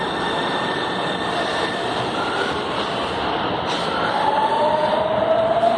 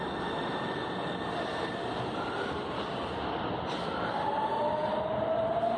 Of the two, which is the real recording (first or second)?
second